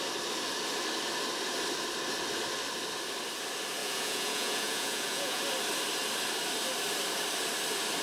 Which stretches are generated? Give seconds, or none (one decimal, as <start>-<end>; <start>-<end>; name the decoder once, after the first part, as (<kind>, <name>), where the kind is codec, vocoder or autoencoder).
3.8-5.4 (vocoder, Vocos)